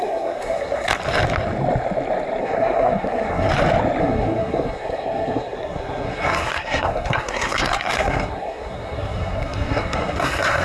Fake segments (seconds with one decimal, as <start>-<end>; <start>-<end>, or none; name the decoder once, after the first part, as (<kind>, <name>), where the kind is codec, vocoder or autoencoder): 0.0-0.9 (codec, SNAC); 2.4-3.5; 4.0-10.6